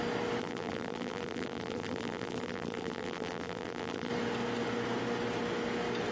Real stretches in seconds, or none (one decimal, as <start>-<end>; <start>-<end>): 0.0-0.4; 4.1-6.1